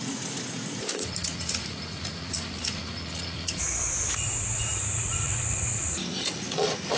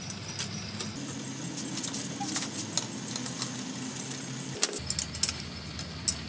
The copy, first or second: first